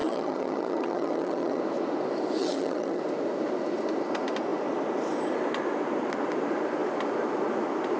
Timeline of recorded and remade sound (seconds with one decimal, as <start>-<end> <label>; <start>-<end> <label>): 0.0-1.6 remade; 1.6-2.4 recorded; 2.4-3.0 remade; 3.0-8.0 recorded